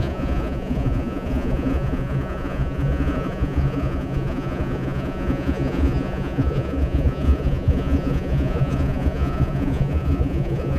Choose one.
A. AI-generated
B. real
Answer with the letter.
A